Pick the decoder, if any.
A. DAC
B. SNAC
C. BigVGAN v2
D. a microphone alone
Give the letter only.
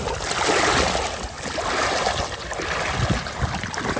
D